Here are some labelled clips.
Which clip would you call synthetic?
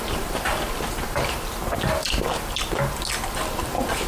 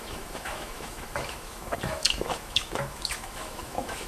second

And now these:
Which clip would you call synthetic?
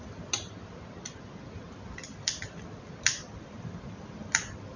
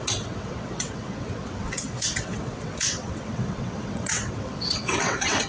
second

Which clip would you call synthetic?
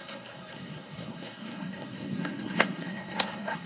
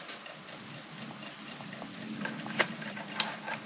first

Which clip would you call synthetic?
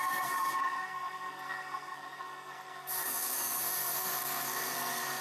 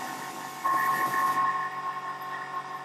first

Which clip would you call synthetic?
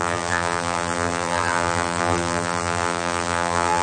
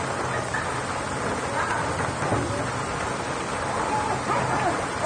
first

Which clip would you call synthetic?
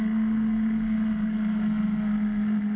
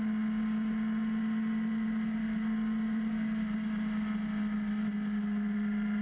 first